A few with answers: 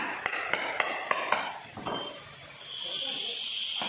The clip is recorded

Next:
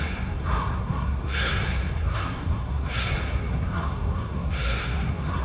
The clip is remade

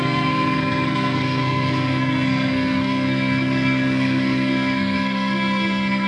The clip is remade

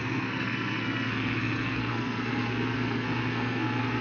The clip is remade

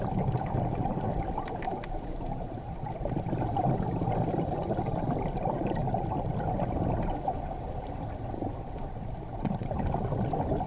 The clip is recorded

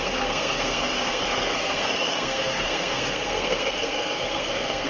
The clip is remade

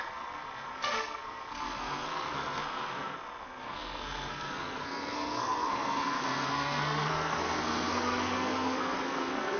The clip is remade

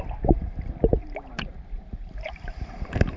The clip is recorded